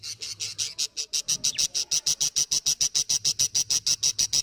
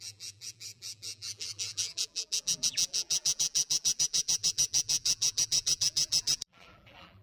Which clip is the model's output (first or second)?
second